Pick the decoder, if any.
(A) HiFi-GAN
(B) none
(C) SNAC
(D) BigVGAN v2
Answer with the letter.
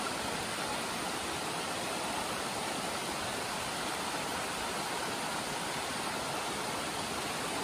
B